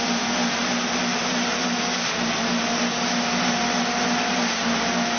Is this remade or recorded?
recorded